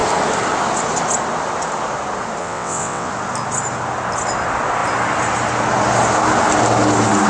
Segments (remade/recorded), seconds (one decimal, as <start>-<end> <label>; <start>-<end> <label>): 0.0-2.4 recorded; 2.4-3.1 remade; 3.1-7.3 recorded